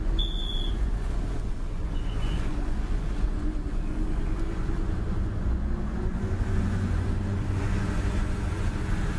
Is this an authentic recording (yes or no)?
no